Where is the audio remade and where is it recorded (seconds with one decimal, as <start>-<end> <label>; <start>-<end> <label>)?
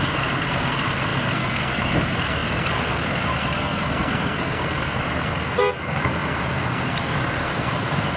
0.0-8.2 remade